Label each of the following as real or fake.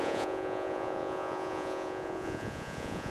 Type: fake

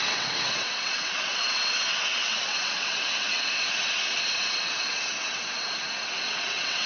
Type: fake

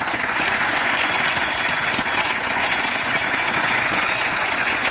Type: fake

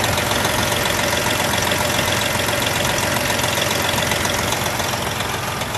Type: real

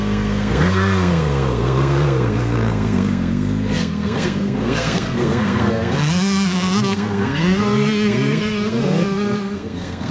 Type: fake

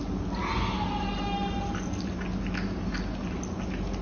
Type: real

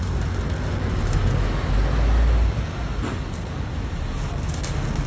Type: real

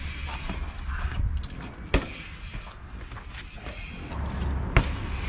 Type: real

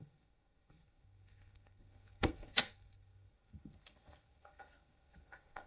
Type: fake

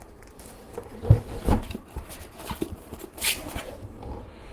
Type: fake